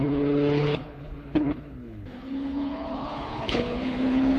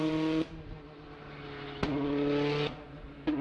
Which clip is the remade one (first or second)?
first